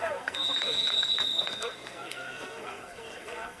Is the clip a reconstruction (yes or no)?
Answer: yes